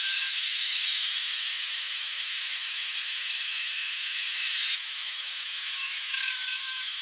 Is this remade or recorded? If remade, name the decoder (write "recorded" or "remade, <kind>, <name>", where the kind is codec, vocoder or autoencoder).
remade, autoencoder, DAC-VAE